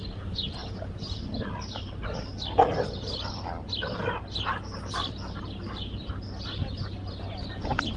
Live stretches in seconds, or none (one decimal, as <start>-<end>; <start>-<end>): 0.0-8.0